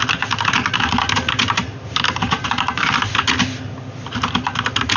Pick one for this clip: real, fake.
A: real